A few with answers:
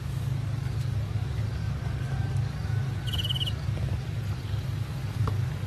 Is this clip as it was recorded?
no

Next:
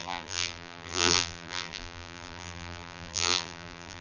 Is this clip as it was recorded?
no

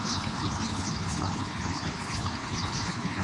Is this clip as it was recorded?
no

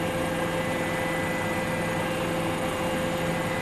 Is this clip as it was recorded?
yes